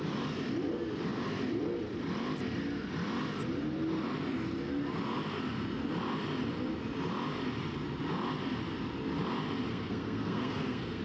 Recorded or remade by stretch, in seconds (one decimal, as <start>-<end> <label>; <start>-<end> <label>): 0.0-9.7 recorded; 9.7-11.0 remade

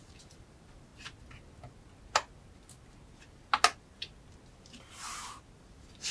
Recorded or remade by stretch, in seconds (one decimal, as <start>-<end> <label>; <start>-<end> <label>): 0.0-0.9 remade; 0.9-4.6 recorded; 4.6-6.1 remade

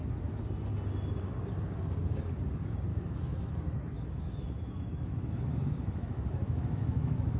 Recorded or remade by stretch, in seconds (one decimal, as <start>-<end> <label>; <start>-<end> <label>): 0.0-2.9 recorded; 2.9-7.4 remade

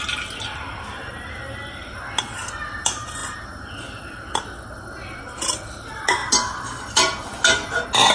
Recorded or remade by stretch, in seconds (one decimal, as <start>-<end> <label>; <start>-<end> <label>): 0.0-8.1 recorded

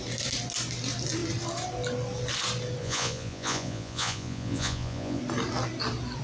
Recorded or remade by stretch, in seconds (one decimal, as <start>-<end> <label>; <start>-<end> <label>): 0.0-2.8 recorded; 2.8-5.2 remade; 5.2-6.2 recorded

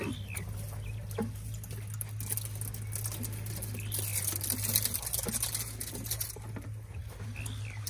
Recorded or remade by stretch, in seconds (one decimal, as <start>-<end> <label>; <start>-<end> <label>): 0.0-7.9 recorded

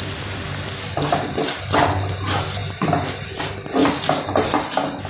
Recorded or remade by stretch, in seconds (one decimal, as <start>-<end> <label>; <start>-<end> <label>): 0.0-5.1 recorded

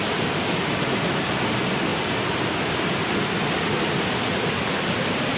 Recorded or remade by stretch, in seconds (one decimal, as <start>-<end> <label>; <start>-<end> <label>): 0.0-5.4 recorded